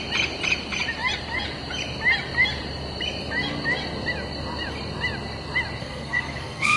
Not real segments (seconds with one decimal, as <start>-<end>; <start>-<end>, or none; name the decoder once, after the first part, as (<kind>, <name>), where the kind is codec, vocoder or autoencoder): 5.8-6.8 (codec, SNAC)